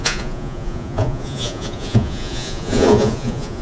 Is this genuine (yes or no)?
no